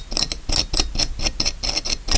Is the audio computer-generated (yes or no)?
no